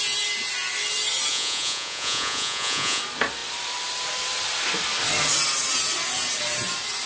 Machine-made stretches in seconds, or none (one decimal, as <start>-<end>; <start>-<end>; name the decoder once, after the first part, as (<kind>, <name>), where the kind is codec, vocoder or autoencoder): 1.3-3.0 (vocoder, Vocos)